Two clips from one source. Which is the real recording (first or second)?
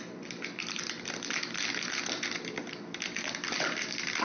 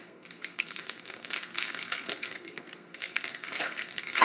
first